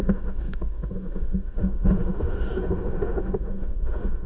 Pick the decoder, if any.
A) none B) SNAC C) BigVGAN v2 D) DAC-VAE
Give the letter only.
D